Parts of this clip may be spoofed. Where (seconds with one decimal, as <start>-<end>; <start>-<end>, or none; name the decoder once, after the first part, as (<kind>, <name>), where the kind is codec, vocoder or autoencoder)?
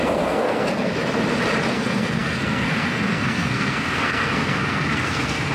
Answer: 0.0-0.9 (codec, SNAC); 1.7-5.5